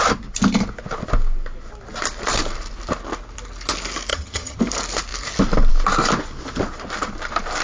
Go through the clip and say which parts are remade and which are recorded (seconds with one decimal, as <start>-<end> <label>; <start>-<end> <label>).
0.0-4.1 recorded; 4.1-4.6 remade; 4.6-7.6 recorded